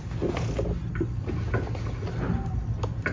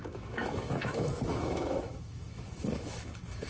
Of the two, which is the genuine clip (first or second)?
first